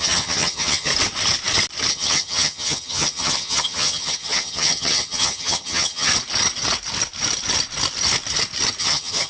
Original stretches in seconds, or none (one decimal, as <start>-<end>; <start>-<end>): 0.9-1.9; 6.1-8.8